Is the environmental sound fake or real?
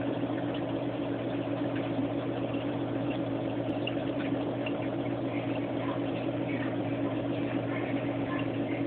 fake